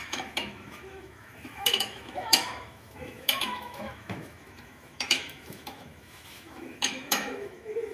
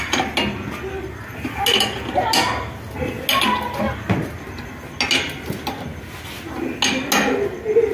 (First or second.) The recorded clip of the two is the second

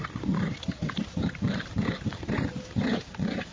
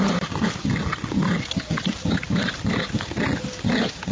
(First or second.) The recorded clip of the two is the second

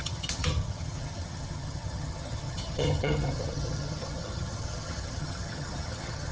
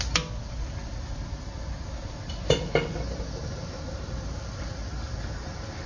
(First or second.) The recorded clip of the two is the second